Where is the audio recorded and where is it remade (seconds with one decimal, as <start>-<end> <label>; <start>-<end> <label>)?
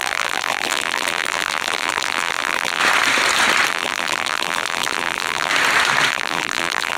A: 0.0-2.8 remade; 2.8-3.7 recorded; 3.7-5.5 remade; 5.5-6.1 recorded; 6.1-7.0 remade